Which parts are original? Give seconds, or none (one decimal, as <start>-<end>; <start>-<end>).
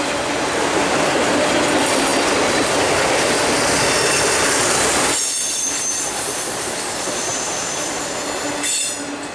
0.0-7.3; 8.0-9.3